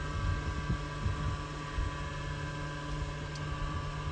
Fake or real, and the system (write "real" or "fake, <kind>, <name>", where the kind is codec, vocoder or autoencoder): real